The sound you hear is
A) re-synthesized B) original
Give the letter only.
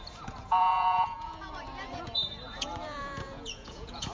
A